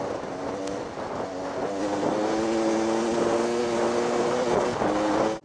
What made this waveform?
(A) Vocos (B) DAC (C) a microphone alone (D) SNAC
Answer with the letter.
C